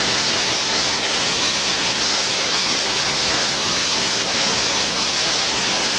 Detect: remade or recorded remade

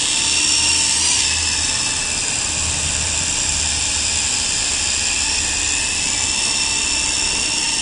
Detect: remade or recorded recorded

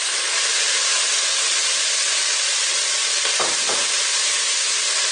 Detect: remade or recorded recorded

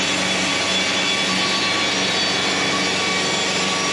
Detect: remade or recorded recorded